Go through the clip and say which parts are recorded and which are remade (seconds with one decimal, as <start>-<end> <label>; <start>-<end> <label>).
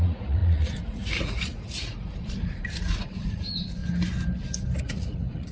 0.0-3.8 remade; 3.8-4.9 recorded; 4.9-5.5 remade